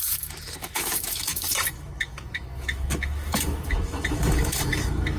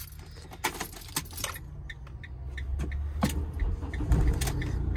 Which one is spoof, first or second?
first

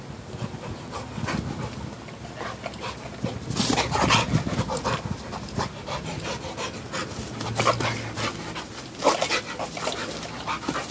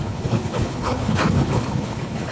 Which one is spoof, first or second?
second